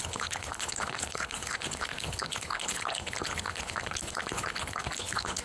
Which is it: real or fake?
fake